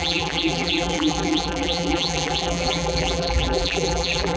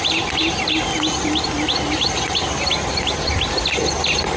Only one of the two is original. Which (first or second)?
second